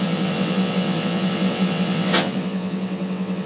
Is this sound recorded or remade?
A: remade